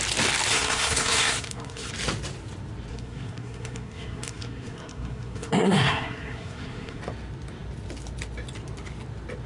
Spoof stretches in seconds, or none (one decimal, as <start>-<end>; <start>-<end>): 0.5-1.9; 2.9-7.0